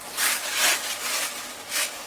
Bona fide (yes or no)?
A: yes